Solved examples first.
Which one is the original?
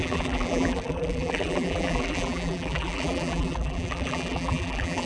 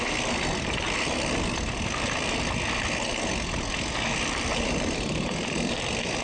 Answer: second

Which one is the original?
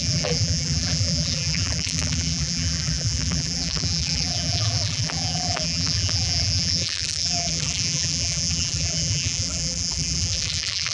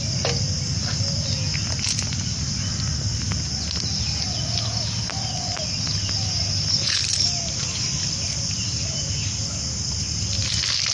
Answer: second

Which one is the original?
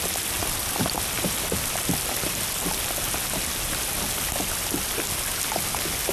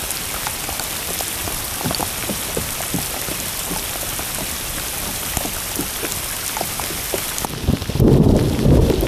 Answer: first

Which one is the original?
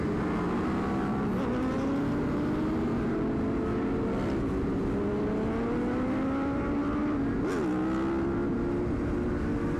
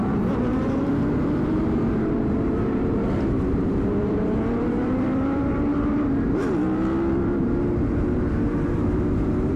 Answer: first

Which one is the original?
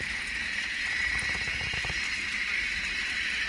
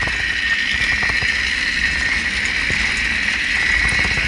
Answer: second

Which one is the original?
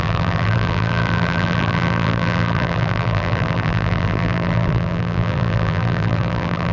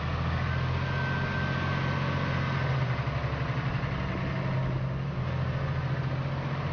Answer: second